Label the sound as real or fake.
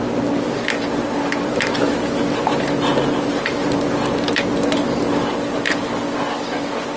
real